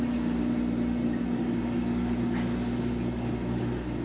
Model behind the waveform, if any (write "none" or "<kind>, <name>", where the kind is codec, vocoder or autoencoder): none